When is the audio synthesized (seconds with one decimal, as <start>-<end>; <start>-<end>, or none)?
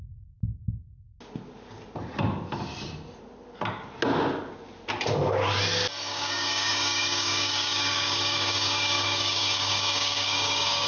6.1-10.9